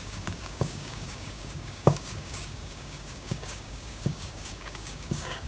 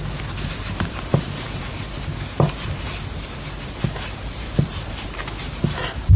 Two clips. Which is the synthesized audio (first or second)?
first